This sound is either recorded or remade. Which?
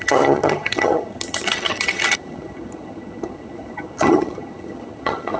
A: remade